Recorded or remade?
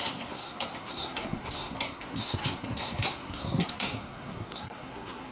remade